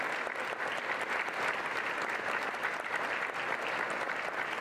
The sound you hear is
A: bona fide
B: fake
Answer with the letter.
A